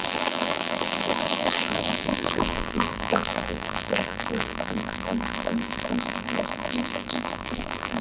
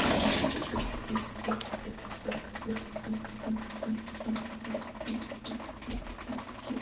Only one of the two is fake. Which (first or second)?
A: first